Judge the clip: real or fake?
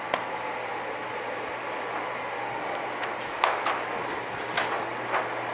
real